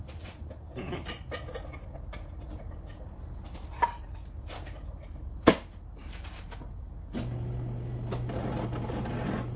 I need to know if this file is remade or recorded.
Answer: recorded